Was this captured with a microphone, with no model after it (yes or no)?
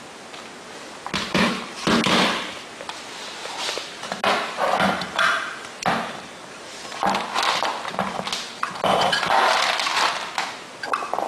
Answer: yes